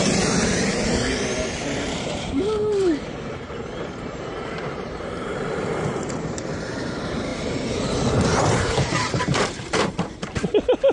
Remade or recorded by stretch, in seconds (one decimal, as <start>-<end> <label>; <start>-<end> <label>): 0.0-10.9 remade